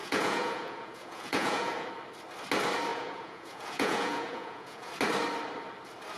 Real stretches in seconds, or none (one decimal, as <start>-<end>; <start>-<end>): 1.9-2.9; 4.9-6.2